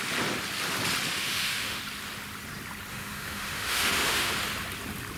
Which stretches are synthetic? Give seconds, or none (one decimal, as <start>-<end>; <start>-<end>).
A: 1.1-1.8; 2.9-4.3